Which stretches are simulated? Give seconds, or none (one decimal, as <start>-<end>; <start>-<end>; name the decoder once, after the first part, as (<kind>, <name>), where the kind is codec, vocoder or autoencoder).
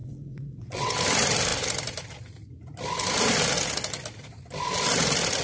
0.0-0.9 (vocoder, WaveNeXt)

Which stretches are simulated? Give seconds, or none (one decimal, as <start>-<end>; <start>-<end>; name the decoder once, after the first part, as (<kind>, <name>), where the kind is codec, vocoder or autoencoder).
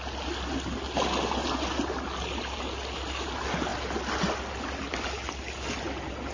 none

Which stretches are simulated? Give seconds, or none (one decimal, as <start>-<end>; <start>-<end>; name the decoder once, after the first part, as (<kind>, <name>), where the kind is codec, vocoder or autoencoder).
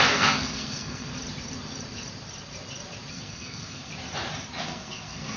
0.0-1.1 (codec, SNAC); 3.1-3.9; 4.6-5.4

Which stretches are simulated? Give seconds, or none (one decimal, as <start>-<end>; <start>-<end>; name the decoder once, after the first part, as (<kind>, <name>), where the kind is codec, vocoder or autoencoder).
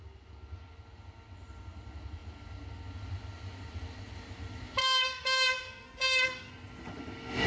4.8-6.5 (codec, SNAC)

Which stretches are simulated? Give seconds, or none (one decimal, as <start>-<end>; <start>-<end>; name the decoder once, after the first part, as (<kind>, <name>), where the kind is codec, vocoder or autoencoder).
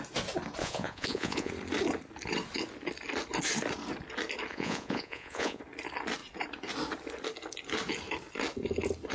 0.6-1.5 (vocoder, Vocos); 4.5-5.6